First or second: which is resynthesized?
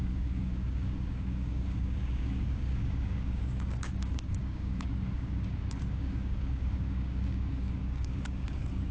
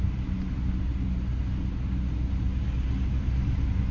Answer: first